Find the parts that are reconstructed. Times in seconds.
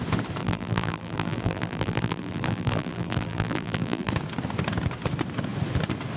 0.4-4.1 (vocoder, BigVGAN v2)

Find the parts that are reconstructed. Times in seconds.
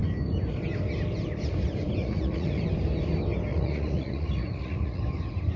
2.0-2.6 (vocoder, Vocos); 3.5-5.0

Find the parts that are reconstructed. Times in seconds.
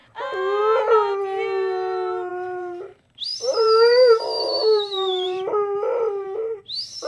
2.3-6.6 (vocoder, BigVGAN v2)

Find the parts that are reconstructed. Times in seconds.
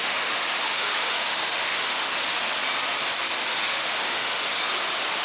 0.0-2.3 (autoencoder, DAC-VAE); 3.4-4.6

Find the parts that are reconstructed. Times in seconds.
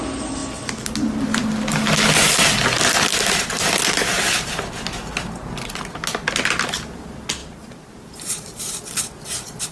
7.4-8.8 (vocoder, BigVGAN v2)